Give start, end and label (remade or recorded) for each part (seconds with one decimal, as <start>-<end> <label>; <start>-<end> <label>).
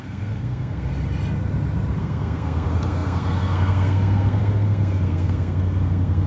0.0-0.9 remade; 0.9-2.0 recorded; 2.0-6.3 remade